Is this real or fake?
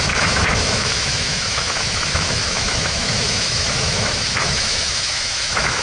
fake